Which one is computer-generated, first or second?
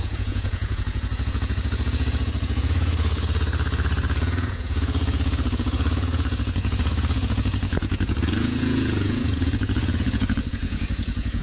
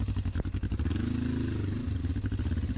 first